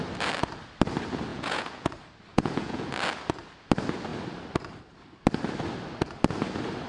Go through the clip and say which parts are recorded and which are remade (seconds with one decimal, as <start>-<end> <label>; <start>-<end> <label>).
0.0-1.3 recorded; 1.3-1.9 remade; 1.9-2.3 recorded; 2.3-2.9 remade; 2.9-6.9 recorded